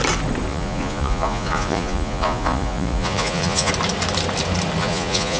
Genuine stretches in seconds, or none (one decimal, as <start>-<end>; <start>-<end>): 0.0-0.5; 3.7-4.8